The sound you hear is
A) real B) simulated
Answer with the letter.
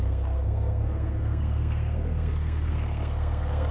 B